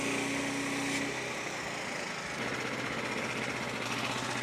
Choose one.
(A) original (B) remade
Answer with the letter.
A